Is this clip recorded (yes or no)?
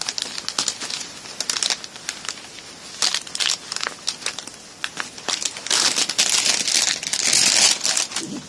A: yes